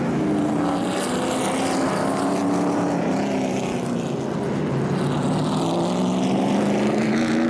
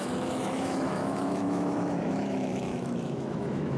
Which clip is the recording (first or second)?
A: first